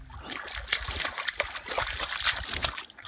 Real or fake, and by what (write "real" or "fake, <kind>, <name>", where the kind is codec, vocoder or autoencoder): real